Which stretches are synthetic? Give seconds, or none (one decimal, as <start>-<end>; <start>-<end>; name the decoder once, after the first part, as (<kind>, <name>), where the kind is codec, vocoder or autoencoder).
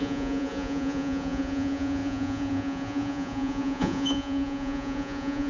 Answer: 0.0-5.5 (vocoder, Vocos)